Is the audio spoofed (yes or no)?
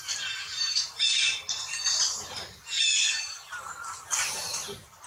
no